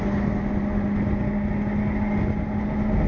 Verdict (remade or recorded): recorded